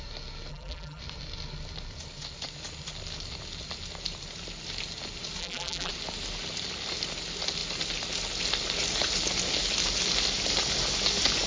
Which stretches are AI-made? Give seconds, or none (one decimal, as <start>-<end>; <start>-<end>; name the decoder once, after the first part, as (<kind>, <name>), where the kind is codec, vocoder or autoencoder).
0.5-1.0 (vocoder, BigVGAN v2); 5.4-5.9